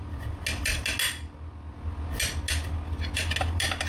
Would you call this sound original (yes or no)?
yes